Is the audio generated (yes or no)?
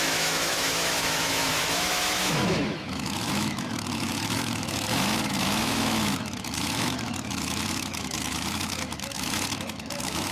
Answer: yes